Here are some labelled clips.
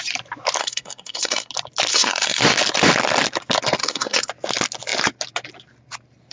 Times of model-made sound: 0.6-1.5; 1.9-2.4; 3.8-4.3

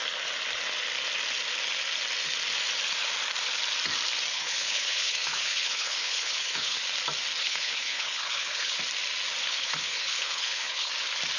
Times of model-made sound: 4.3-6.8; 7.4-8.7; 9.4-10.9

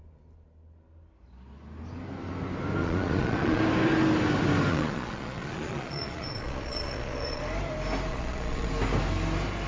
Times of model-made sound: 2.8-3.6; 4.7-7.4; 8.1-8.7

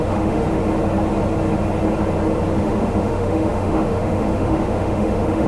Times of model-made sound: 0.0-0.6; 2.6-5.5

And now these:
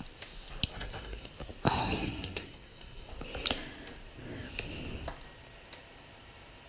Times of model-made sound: 0.7-1.3; 1.8-3.1

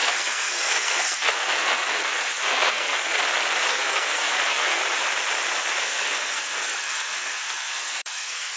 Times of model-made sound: 0.0-3.2; 3.7-4.8; 5.8-8.6

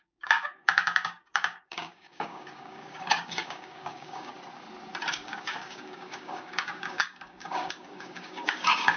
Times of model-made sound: 0.0-4.3; 5.1-9.0